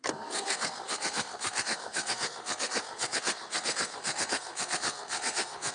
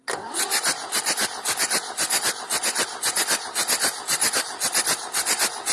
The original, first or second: second